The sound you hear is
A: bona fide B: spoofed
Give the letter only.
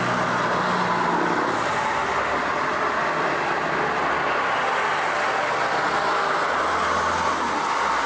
A